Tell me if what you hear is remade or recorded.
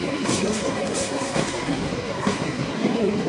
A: remade